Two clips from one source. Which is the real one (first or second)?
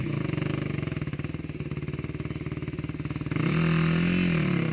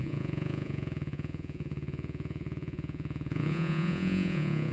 first